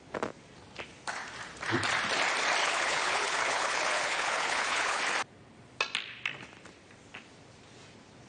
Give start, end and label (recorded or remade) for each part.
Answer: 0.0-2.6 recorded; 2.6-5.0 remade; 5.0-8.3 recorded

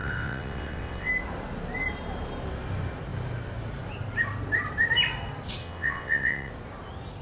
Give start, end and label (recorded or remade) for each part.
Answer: 0.0-1.1 remade; 1.1-5.6 recorded; 5.6-6.5 remade; 6.5-7.2 recorded

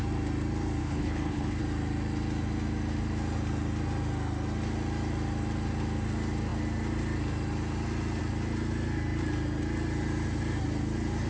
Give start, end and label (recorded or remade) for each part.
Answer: 0.0-0.8 recorded; 0.8-1.6 remade; 1.6-11.3 recorded

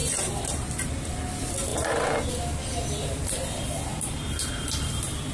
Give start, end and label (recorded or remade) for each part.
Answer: 0.0-5.3 recorded

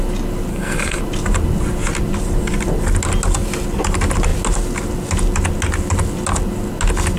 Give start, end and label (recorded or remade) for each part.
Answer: 0.0-0.5 recorded; 0.5-1.0 remade; 1.0-7.2 recorded